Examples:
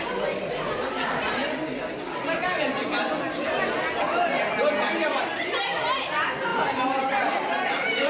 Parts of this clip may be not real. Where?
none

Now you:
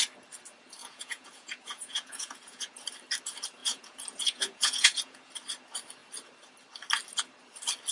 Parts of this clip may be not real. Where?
0.8-2.8 (vocoder, Vocos); 3.6-5.3